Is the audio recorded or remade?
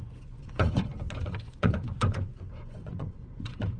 remade